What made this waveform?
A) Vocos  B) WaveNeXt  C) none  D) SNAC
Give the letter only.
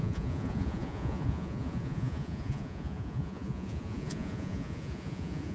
A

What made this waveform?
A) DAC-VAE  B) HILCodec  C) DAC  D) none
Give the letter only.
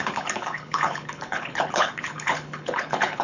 B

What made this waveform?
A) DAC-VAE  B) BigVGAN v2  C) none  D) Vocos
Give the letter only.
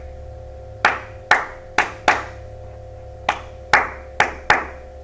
C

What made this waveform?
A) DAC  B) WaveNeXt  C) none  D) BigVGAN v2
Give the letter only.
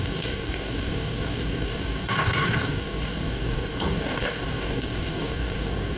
A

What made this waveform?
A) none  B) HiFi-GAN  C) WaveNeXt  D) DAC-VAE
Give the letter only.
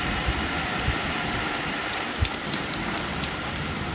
A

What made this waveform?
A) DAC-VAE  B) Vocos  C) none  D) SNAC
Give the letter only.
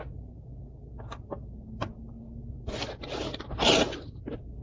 C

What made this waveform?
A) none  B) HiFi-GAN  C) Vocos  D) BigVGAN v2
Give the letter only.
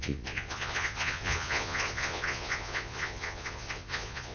C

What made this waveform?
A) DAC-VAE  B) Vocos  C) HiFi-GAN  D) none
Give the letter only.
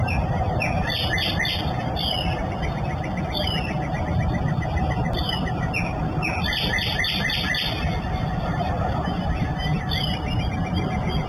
D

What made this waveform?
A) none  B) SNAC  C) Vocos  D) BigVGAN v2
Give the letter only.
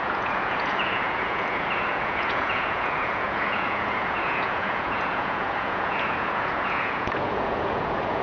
C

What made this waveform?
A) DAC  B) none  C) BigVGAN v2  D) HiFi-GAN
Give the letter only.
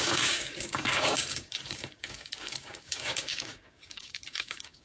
A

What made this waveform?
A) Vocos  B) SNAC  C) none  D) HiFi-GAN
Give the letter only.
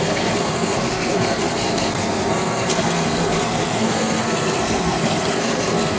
B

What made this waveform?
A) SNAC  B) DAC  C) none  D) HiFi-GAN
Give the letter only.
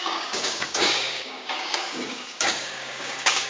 B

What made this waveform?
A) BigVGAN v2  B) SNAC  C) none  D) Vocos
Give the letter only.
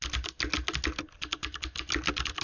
C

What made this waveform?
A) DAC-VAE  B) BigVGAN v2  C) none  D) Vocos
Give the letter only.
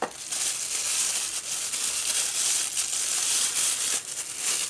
C